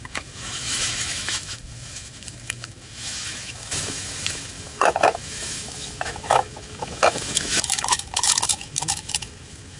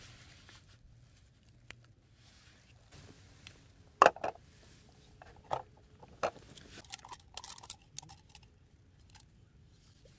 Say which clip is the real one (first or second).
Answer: second